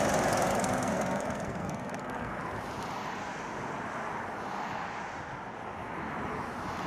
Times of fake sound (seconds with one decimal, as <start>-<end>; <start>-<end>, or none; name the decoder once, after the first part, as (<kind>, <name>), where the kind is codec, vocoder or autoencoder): 0.5-2.4 (codec, SNAC)